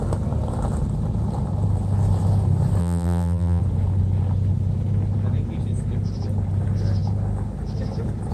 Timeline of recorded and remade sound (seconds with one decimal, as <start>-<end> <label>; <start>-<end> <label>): 0.0-2.8 recorded; 2.8-3.6 remade; 3.6-8.3 recorded